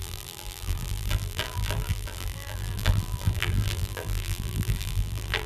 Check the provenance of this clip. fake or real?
fake